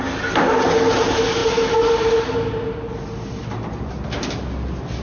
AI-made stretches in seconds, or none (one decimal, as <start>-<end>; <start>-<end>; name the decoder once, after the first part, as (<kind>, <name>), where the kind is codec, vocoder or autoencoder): none